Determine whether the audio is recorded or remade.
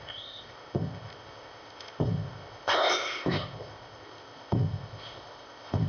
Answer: remade